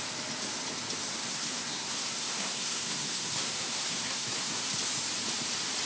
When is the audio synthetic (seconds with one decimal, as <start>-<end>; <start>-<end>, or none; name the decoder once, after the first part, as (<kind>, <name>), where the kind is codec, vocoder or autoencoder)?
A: 1.2-4.6 (codec, SNAC)

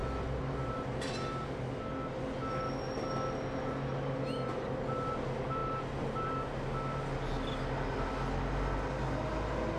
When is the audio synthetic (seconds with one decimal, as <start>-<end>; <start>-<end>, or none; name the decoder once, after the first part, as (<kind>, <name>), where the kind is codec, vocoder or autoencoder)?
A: none

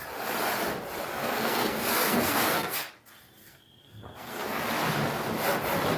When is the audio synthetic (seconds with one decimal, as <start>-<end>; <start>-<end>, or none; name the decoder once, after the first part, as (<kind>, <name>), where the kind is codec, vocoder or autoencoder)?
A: 1.1-2.9 (codec, SNAC); 3.4-4.6

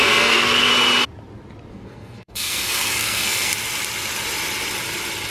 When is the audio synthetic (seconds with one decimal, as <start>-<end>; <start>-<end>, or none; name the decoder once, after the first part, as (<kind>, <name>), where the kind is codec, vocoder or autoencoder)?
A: 0.0-0.7 (codec, SNAC); 1.7-3.5

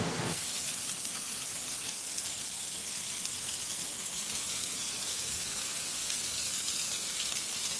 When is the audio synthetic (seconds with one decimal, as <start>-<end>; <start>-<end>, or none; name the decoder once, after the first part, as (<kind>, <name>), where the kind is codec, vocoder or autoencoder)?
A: 0.0-7.8 (codec, SNAC)